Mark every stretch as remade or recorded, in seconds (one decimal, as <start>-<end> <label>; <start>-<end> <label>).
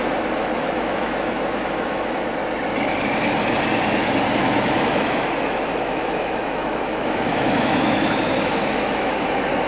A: 0.0-0.4 recorded; 0.4-2.2 remade; 2.2-4.4 recorded; 4.4-9.1 remade; 9.1-9.7 recorded